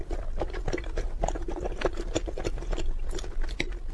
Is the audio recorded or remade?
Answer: recorded